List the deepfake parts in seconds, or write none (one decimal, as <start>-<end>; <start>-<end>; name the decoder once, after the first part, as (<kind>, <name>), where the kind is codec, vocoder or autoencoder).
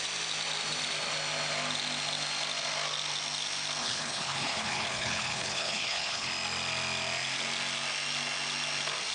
3.8-6.3 (codec, HILCodec)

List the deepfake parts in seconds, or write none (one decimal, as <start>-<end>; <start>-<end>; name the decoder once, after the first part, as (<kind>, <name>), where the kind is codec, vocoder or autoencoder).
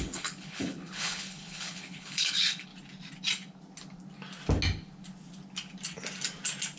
0.0-2.7 (codec, HILCodec)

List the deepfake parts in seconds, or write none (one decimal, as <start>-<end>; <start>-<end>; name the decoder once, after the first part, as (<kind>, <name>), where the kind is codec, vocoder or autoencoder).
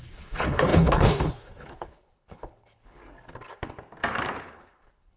0.0-3.0 (codec, HILCodec); 4.4-5.2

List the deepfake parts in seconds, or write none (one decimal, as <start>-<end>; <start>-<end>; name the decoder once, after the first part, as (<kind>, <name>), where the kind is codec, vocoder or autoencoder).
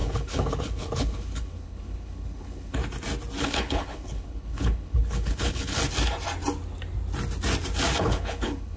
0.0-2.8 (codec, HILCodec); 3.4-5.8; 8.0-8.8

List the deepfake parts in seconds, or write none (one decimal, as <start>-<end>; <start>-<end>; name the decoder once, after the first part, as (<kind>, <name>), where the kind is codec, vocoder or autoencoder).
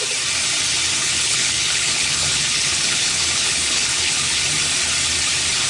1.0-4.4 (codec, HILCodec)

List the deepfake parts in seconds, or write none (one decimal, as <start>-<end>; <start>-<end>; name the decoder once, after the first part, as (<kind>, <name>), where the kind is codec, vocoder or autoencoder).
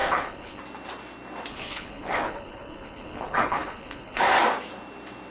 0.0-0.6 (codec, HILCodec); 1.5-4.2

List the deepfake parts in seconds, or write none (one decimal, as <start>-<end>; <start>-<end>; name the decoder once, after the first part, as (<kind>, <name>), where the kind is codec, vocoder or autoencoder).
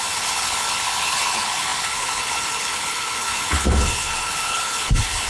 0.0-5.3 (codec, HILCodec)